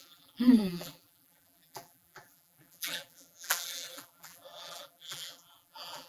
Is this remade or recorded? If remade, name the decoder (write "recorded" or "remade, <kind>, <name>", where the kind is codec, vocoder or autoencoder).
remade, vocoder, BigVGAN v2